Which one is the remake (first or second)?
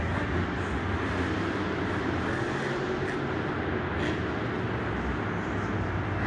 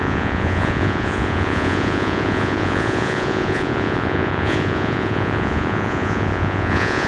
second